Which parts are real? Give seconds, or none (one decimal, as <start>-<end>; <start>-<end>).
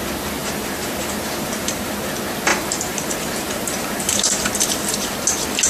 0.0-0.4; 1.8-2.5; 4.5-5.7